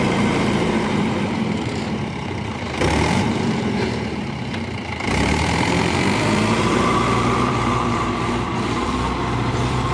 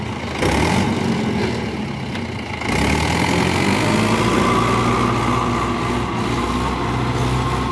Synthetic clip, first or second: first